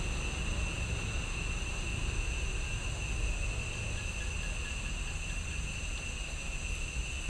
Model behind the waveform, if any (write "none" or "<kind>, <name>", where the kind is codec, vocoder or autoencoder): none